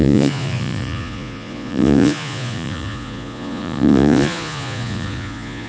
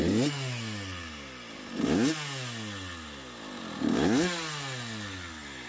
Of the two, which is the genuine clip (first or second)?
second